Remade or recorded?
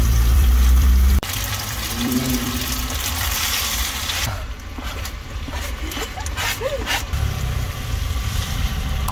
remade